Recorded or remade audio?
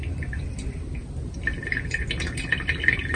recorded